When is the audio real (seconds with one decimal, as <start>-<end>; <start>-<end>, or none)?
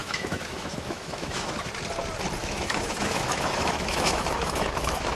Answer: 1.7-2.4